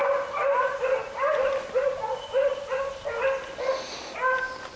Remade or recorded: recorded